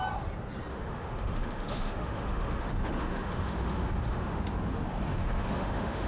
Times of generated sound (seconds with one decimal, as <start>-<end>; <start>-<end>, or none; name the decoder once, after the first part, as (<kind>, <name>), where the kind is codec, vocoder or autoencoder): 0.7-4.4 (autoencoder, DAC-VAE); 5.1-6.1